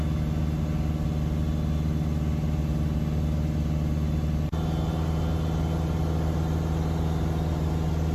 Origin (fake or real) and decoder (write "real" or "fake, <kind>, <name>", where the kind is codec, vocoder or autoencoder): real